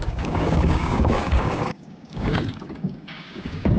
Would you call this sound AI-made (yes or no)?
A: yes